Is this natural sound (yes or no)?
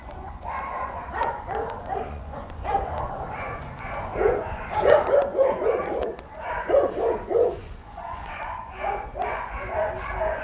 no